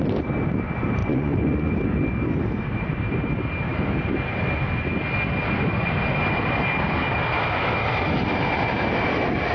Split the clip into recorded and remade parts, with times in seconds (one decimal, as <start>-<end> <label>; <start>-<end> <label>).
0.0-1.0 recorded; 1.0-1.7 remade; 1.7-9.5 recorded